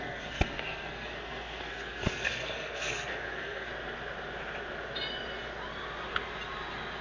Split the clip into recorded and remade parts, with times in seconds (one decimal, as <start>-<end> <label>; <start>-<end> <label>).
0.0-3.7 remade; 3.7-7.0 recorded